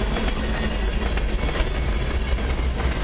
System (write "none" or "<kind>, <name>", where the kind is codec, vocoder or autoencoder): none